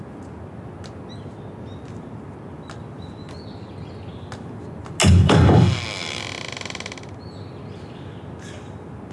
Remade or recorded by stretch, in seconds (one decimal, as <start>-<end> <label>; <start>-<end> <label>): 0.0-5.0 recorded; 5.0-6.2 remade; 6.2-9.1 recorded